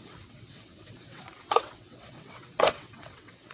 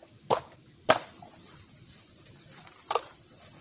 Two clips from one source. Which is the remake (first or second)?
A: first